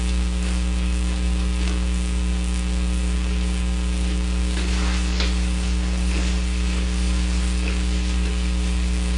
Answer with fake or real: fake